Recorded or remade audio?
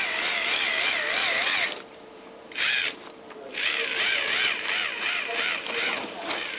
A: remade